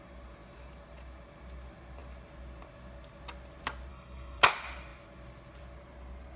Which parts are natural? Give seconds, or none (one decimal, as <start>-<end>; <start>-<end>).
0.0-3.9; 4.4-6.4